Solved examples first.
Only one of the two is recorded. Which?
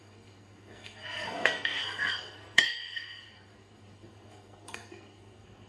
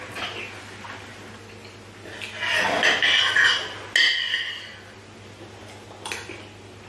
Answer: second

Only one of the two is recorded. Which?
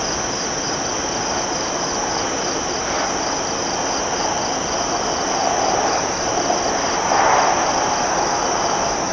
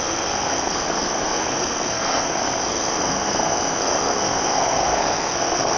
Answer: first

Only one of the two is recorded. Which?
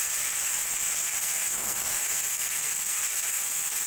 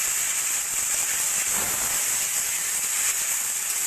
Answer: second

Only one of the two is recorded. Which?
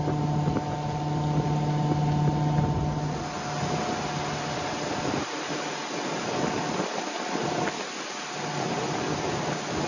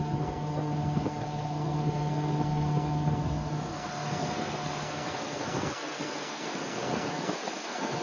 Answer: first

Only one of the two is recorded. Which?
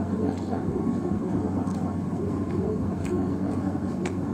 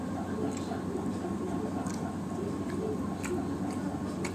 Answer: second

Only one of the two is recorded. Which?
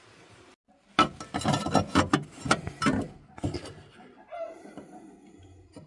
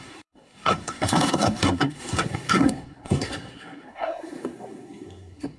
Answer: first